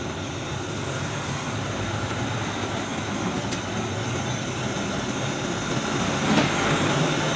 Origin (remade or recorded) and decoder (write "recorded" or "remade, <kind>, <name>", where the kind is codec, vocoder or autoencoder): recorded